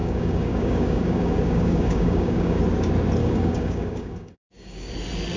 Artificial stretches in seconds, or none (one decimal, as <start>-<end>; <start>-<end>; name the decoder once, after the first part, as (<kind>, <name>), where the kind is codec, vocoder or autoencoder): 0.0-2.6 (codec, DAC); 3.2-4.9